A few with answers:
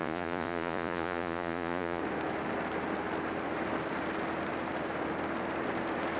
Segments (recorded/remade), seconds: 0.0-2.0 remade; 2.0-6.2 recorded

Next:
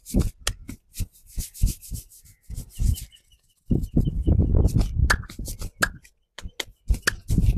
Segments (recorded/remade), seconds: 0.0-7.6 recorded

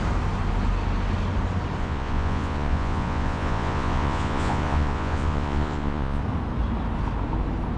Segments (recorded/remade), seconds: 0.0-1.8 recorded; 1.8-6.2 remade; 6.2-7.8 recorded

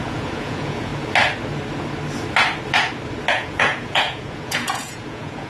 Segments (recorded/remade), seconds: 0.0-0.9 remade; 0.9-3.3 recorded; 3.3-5.5 remade

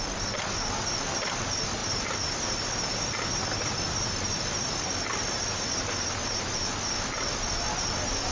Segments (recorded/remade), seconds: 0.0-8.3 recorded

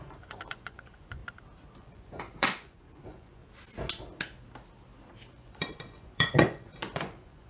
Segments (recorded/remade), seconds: 0.0-1.2 remade; 1.2-1.8 recorded; 1.8-3.4 remade; 3.4-5.3 recorded; 5.3-7.5 remade

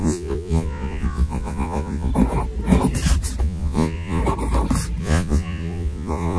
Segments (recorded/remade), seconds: 0.0-2.1 remade; 2.1-3.4 recorded; 3.4-4.2 remade; 4.2-5.0 recorded; 5.0-6.4 remade

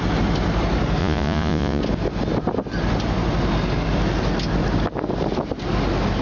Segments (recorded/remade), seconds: 0.0-1.0 recorded; 1.0-1.8 remade; 1.8-6.2 recorded